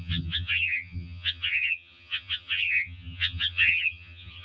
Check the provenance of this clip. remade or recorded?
remade